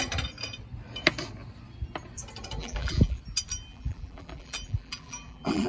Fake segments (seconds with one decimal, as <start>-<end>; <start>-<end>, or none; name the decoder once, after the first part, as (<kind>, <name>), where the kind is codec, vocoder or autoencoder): 2.6-3.2 (vocoder, BigVGAN v2); 3.7-5.7

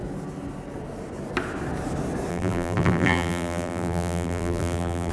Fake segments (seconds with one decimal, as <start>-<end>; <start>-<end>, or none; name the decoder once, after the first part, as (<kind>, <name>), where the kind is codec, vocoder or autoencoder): 2.3-5.1 (vocoder, BigVGAN v2)

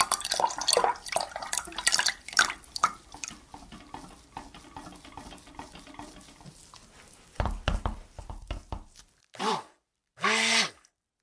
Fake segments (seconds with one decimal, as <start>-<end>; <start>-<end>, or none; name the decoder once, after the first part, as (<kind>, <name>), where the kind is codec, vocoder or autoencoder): 6.8-8.3 (vocoder, BigVGAN v2)

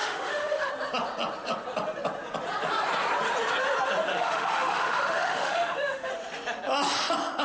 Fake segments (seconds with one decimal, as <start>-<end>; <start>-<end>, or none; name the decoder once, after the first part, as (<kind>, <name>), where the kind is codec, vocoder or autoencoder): 0.0-0.7 (autoencoder, DAC-VAE); 4.1-6.1

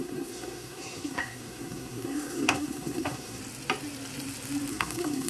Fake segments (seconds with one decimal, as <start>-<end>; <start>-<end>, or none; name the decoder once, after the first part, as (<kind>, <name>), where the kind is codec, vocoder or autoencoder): 0.0-3.4 (codec, SNAC); 4.7-5.3

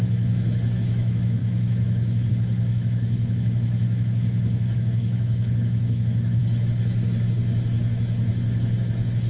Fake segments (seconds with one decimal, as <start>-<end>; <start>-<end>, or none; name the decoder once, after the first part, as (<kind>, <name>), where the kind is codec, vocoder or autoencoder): 0.0-9.3 (autoencoder, DAC-VAE)

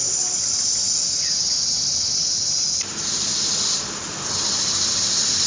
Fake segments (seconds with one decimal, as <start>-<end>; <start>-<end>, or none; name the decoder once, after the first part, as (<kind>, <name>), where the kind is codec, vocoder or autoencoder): none

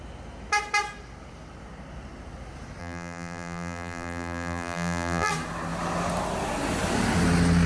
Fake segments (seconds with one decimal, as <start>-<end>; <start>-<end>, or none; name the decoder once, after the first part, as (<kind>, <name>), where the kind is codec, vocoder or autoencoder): 2.8-5.3 (vocoder, BigVGAN v2)